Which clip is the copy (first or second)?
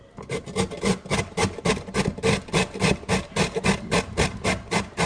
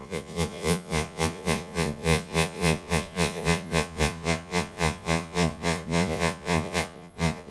second